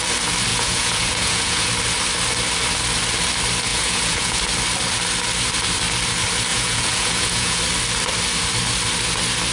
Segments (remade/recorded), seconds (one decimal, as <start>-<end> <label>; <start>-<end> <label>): 0.0-0.5 recorded; 0.5-1.7 remade; 1.7-3.7 recorded; 3.7-4.4 remade; 4.4-6.5 recorded; 6.5-7.6 remade; 7.6-9.5 recorded